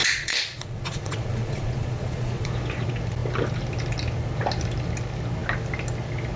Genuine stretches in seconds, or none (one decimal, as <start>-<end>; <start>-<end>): 2.5-6.4